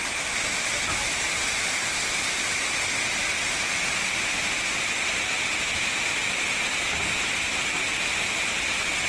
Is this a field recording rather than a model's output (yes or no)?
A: yes